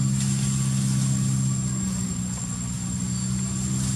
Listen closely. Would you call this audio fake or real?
real